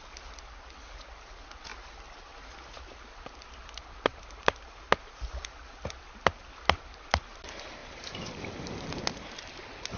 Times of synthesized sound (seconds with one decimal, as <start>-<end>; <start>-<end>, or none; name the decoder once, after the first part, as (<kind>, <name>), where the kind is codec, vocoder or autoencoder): 4.1-4.9 (vocoder, BigVGAN v2); 7.8-9.0